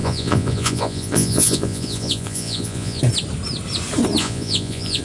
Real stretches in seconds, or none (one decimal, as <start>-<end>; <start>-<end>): 3.0-4.2